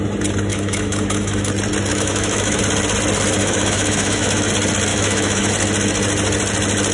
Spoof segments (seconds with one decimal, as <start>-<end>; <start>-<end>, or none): 0.5-1.5; 1.9-2.6; 3.4-4.5; 4.9-5.5